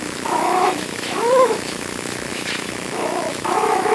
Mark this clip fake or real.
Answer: fake